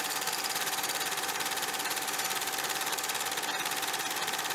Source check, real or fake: fake